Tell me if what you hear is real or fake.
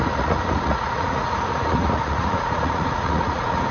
fake